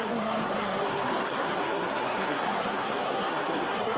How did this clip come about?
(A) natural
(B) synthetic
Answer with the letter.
B